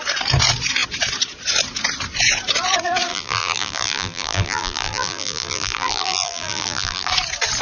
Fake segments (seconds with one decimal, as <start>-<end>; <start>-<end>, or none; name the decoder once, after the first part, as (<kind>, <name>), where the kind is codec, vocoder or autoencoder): 3.1-7.1 (vocoder, BigVGAN v2)